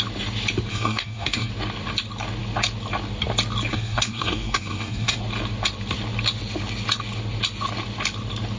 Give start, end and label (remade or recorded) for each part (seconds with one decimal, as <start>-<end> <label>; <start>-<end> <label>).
0.0-0.7 recorded; 0.7-1.5 remade; 1.5-3.7 recorded; 3.7-5.2 remade; 5.2-8.6 recorded